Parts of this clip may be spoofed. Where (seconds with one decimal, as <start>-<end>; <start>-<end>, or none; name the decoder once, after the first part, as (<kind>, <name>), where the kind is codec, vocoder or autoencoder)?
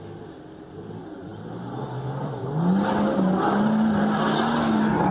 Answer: none